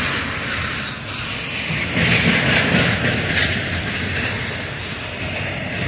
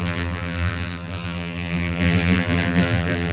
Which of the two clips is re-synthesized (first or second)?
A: second